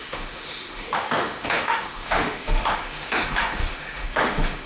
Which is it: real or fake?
fake